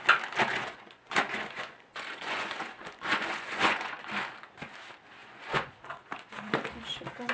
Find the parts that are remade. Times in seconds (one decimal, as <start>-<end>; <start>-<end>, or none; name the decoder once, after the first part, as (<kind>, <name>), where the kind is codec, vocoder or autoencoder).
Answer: 0.5-4.1 (vocoder, Vocos); 5.2-6.5